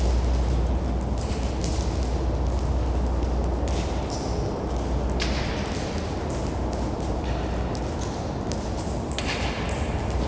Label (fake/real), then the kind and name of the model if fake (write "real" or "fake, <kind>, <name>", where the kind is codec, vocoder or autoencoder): real